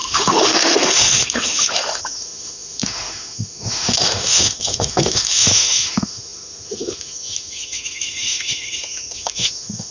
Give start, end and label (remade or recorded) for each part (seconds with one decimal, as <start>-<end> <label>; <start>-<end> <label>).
0.0-9.9 remade